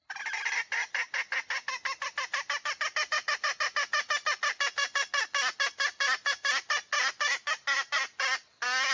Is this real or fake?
real